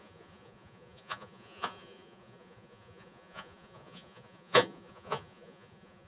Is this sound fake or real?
fake